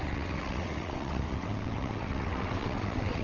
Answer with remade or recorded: remade